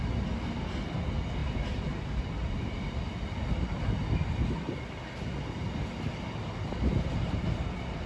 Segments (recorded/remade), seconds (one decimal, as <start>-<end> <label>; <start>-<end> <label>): 0.0-8.1 recorded